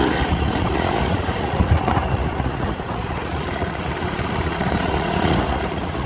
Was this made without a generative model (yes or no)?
no